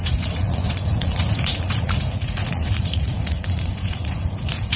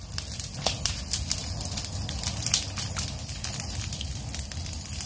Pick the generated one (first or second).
first